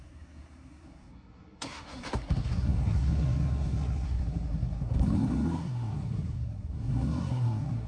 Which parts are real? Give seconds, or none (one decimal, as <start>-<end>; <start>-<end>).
none